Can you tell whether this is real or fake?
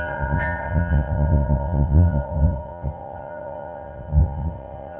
fake